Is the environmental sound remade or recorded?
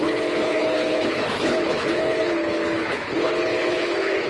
remade